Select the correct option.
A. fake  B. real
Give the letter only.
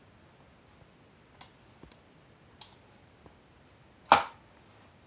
B